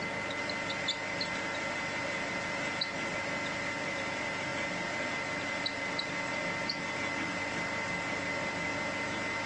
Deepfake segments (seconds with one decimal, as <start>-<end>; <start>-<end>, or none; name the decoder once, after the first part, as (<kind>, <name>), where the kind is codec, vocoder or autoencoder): none